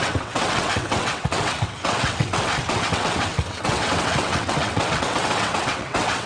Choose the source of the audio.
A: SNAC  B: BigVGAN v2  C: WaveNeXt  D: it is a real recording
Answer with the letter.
C